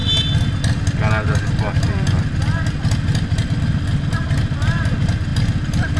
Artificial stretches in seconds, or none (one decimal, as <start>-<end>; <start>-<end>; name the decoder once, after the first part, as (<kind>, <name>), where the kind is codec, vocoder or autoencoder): none